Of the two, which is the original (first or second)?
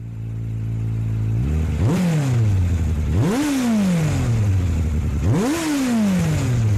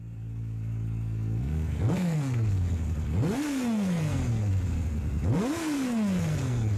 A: first